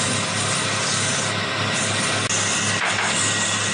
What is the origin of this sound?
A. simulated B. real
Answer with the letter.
B